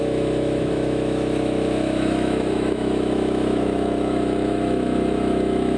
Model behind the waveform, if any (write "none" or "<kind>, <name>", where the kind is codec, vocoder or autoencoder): autoencoder, DAC-VAE